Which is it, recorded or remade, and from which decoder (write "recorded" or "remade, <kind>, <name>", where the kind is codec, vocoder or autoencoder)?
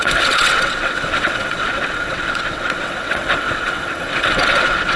remade, vocoder, WaveNeXt